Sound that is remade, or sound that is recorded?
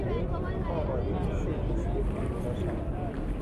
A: recorded